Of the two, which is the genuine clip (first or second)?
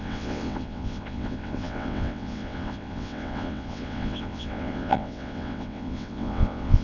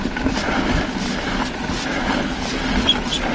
second